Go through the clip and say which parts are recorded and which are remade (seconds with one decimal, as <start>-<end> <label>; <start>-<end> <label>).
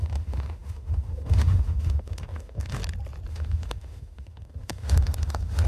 0.0-2.8 remade; 2.8-3.3 recorded; 3.3-5.7 remade